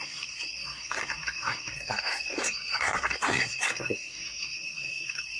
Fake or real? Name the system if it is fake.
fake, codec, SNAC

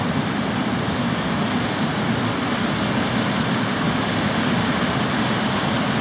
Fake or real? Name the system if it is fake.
real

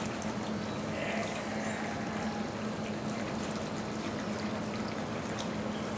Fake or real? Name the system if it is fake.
real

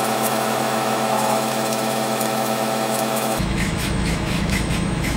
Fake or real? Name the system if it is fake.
fake, autoencoder, DAC-VAE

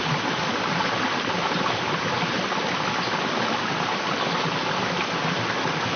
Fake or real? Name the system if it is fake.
real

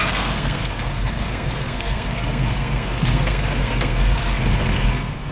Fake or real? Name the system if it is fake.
fake, codec, SNAC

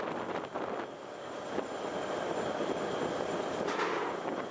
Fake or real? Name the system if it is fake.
real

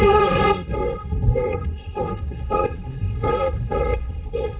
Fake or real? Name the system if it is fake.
fake, codec, SNAC